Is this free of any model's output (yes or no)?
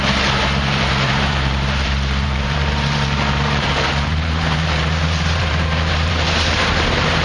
no